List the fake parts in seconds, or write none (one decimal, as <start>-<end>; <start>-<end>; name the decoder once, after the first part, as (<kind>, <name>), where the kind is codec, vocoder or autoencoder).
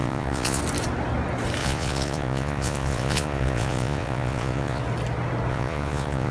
0.0-0.6 (vocoder, Vocos); 1.6-4.8; 5.5-6.3